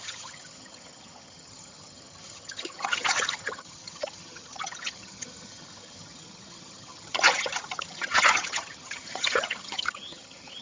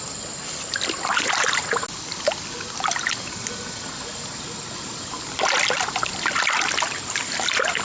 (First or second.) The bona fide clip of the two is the second